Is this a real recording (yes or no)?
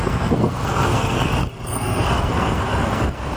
no